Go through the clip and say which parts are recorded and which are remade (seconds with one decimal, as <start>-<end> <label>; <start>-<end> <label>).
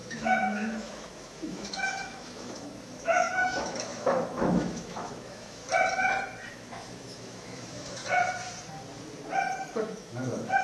0.0-5.6 remade; 5.6-6.5 recorded; 6.5-8.0 remade; 8.0-9.8 recorded; 9.8-10.6 remade